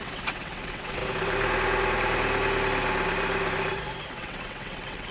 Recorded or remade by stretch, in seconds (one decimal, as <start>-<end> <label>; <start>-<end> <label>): 0.0-1.0 remade; 1.0-4.1 recorded; 4.1-5.1 remade